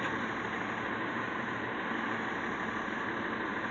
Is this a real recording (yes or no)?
yes